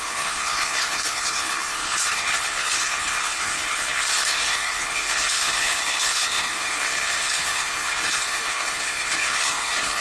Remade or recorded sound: remade